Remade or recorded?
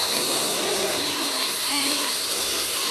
remade